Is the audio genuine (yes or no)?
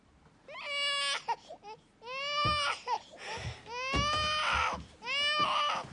yes